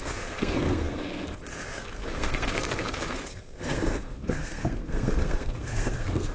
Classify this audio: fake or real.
fake